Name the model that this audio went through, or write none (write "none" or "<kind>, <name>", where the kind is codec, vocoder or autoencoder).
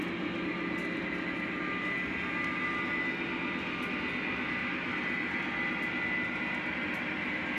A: none